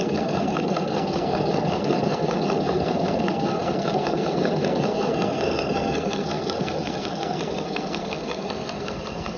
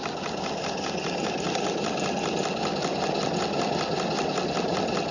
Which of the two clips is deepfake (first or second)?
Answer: first